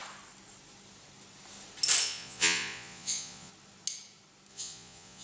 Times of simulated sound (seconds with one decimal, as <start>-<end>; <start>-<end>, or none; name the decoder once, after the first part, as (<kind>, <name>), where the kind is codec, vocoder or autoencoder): 2.0-3.5 (vocoder, Vocos); 4.5-5.2

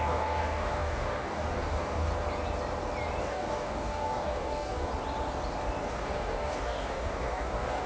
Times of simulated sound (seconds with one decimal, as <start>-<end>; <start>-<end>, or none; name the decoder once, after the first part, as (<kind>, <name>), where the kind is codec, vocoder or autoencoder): 0.0-2.1 (codec, DAC); 3.2-4.9; 5.8-7.9

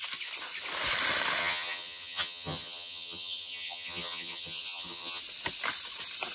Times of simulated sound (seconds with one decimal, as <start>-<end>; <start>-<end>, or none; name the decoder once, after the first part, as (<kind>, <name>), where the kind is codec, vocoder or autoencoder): 1.4-5.2 (vocoder, HiFi-GAN)